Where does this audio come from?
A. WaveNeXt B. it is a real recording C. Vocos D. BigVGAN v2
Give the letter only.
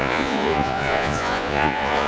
C